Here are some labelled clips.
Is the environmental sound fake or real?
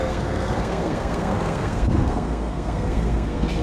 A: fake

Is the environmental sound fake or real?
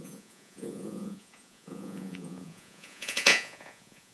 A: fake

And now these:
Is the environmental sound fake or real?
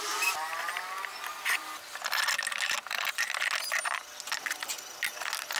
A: real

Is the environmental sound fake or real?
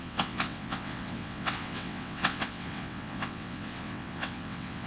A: fake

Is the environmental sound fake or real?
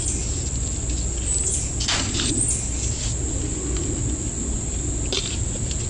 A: real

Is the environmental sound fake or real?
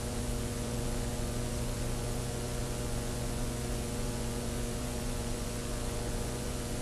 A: fake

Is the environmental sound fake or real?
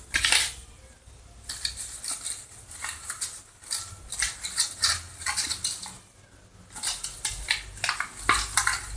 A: real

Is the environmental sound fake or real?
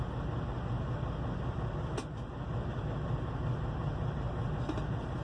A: real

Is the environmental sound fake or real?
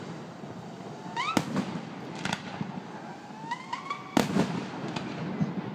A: real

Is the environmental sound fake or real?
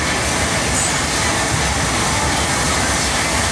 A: real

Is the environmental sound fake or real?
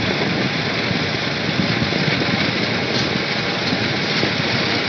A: real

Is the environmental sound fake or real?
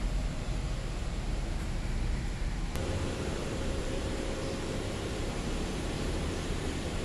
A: fake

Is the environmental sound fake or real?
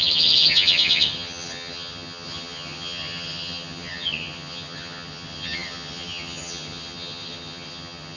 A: fake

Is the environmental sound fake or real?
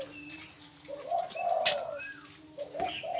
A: real